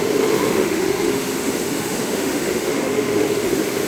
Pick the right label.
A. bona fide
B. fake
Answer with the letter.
B